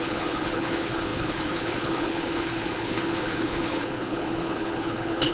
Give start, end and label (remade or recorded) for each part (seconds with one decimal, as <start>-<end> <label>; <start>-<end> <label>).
0.0-5.3 remade